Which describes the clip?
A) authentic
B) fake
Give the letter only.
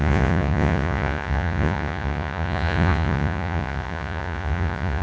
B